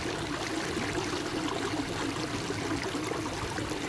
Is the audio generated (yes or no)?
no